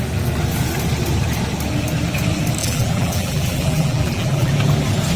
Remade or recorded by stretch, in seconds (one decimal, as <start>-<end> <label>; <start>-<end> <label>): 0.0-2.6 recorded; 2.6-4.5 remade; 4.5-5.2 recorded